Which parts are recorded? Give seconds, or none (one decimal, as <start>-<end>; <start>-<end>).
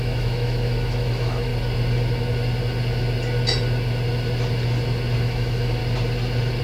1.5-5.2; 5.8-6.6